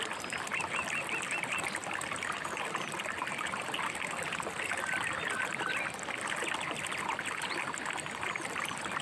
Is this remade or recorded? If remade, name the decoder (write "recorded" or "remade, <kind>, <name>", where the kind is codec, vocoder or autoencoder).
recorded